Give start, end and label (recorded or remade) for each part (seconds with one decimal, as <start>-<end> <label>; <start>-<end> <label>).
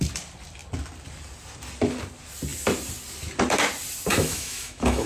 0.0-4.1 recorded; 4.1-5.1 remade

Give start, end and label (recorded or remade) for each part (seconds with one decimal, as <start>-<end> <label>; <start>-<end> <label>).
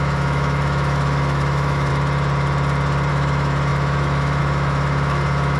0.0-1.9 remade; 1.9-3.1 recorded; 3.1-5.6 remade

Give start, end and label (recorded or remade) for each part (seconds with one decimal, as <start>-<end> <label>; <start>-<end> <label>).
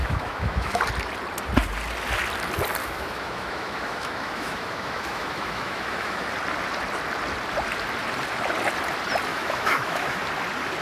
0.0-0.8 remade; 0.8-2.8 recorded; 2.8-6.3 remade; 6.3-9.3 recorded; 9.3-10.2 remade; 10.2-10.8 recorded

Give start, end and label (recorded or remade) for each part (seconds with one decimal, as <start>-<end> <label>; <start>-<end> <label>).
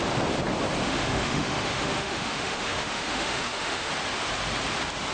0.0-0.8 recorded; 0.8-3.9 remade; 3.9-5.1 recorded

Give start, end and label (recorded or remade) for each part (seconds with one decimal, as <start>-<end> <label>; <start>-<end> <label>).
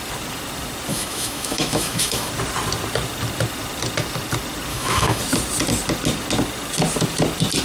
0.0-0.9 recorded; 0.9-2.3 remade; 2.3-4.7 recorded; 4.7-5.2 remade; 5.2-7.6 recorded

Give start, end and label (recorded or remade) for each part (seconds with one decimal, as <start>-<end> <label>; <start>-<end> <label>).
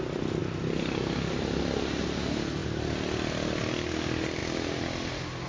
0.0-5.5 recorded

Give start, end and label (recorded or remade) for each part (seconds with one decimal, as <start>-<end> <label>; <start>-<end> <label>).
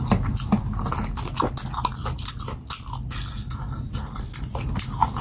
0.0-5.2 recorded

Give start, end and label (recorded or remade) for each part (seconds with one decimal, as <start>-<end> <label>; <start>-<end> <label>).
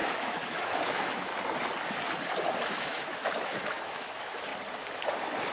0.0-1.3 remade; 1.3-2.7 recorded; 2.7-4.5 remade; 4.5-5.5 recorded